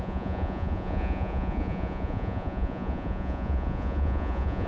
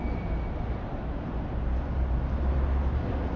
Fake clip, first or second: first